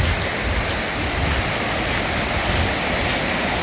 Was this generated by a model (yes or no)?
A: no